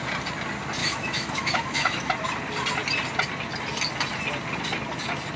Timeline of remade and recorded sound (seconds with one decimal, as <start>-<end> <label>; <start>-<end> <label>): 0.0-0.8 recorded; 0.8-2.1 remade; 2.1-5.4 recorded